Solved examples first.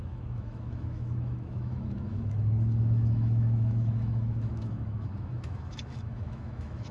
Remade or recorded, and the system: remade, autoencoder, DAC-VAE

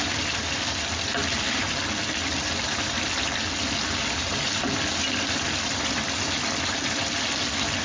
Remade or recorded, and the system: recorded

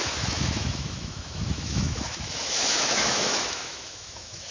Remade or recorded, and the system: remade, autoencoder, DAC-VAE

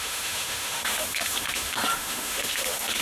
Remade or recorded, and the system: remade, autoencoder, DAC-VAE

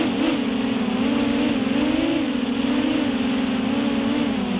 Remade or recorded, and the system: recorded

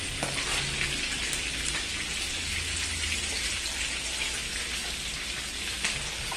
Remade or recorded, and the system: recorded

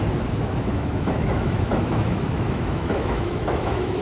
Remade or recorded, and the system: remade, autoencoder, DAC-VAE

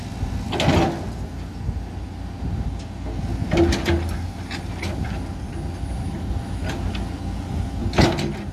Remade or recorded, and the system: recorded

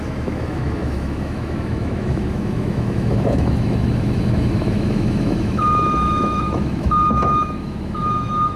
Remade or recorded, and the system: remade, autoencoder, DAC-VAE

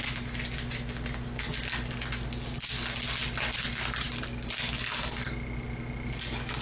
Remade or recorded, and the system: recorded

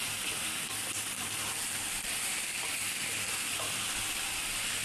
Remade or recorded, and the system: recorded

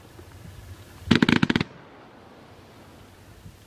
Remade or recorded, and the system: recorded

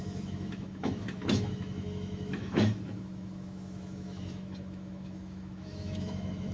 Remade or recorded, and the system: remade, autoencoder, DAC-VAE